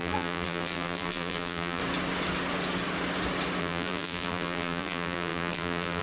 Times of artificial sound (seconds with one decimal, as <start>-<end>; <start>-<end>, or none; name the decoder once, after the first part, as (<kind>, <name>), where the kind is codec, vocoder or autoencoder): 0.0-1.8 (vocoder, BigVGAN v2); 3.6-6.0